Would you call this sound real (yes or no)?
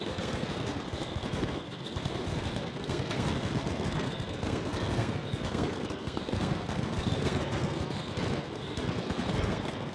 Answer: no